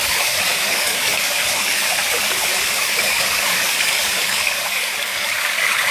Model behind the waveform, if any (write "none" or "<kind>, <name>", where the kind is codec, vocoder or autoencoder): codec, DAC